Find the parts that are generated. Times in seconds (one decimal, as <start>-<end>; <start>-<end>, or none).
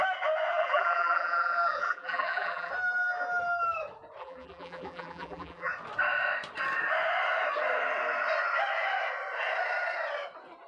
0.5-2.7; 4.2-5.7